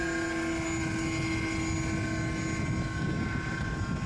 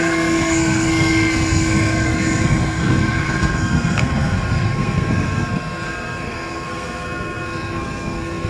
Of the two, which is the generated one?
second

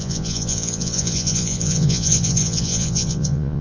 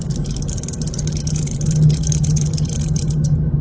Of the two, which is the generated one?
first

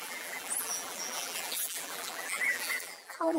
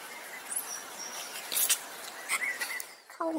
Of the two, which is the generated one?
first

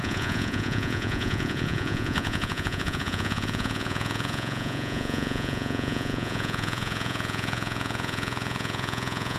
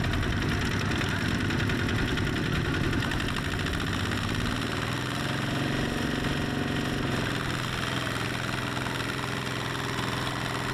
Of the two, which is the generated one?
first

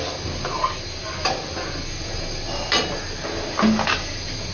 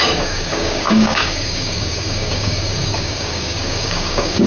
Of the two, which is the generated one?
second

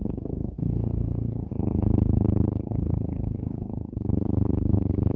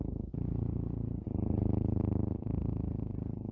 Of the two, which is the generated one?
first